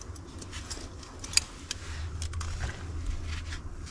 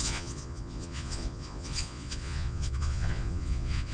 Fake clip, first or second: second